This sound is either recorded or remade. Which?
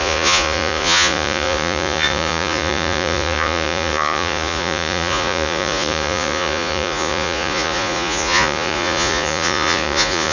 remade